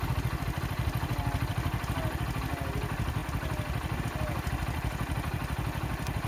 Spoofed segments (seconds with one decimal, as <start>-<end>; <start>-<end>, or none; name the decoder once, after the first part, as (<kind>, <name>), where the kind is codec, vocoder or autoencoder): none